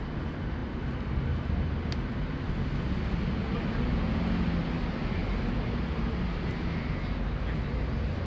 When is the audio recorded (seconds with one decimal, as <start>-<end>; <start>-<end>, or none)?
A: 0.0-8.3